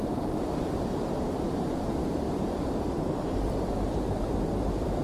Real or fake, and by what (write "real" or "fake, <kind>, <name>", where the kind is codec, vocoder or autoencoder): fake, vocoder, BigVGAN v2